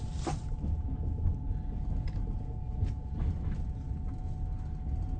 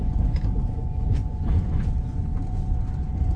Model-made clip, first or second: second